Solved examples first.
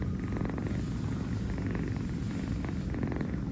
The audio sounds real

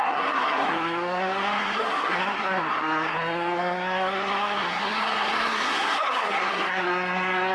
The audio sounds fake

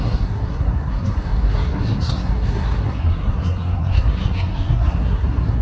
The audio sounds fake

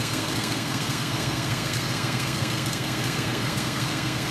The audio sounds fake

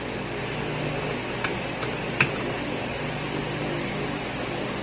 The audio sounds real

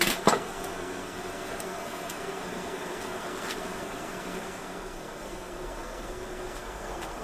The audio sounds fake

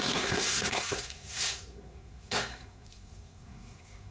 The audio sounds fake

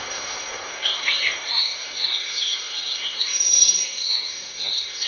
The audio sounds fake